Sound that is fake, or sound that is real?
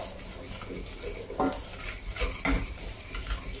real